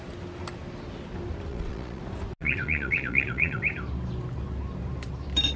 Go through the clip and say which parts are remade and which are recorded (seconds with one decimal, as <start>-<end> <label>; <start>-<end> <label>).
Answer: 0.0-1.5 recorded; 1.5-2.0 remade; 2.0-2.4 recorded; 2.4-3.6 remade; 3.6-5.6 recorded